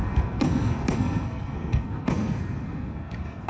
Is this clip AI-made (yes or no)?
yes